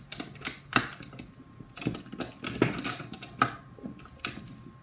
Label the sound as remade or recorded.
recorded